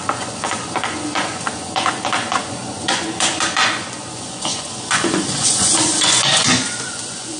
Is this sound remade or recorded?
remade